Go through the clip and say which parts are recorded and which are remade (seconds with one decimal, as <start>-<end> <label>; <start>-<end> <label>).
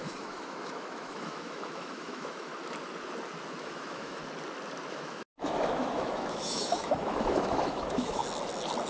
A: 0.0-2.5 remade; 2.5-3.6 recorded; 3.6-4.2 remade; 4.2-4.9 recorded; 4.9-8.2 remade; 8.2-8.9 recorded